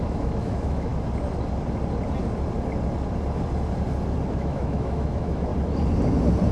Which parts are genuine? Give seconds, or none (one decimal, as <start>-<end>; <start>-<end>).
0.9-4.3; 5.5-6.5